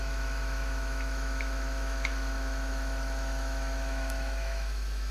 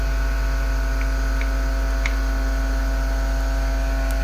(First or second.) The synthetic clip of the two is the first